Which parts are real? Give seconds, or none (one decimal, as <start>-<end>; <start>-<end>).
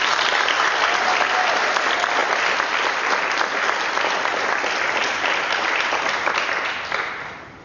0.0-7.6